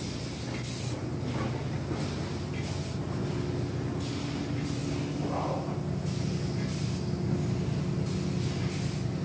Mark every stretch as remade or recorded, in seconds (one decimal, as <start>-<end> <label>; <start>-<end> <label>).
0.0-9.2 recorded